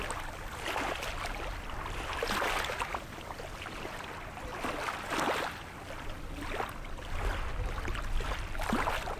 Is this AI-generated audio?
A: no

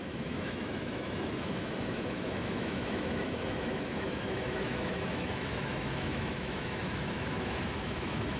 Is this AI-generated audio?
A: yes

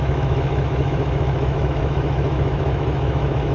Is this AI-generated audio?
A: yes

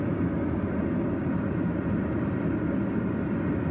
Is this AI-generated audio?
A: no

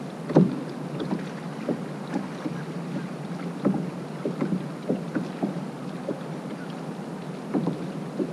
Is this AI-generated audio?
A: no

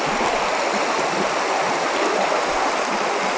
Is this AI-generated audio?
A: no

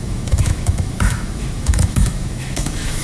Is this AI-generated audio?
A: yes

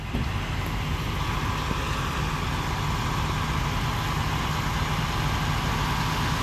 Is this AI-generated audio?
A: no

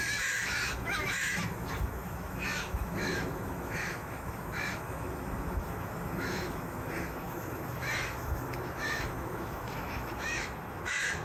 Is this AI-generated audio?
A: yes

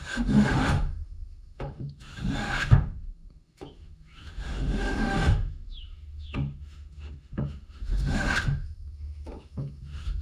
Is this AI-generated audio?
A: yes